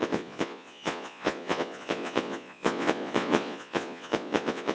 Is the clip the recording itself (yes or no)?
no